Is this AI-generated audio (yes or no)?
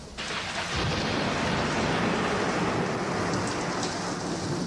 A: no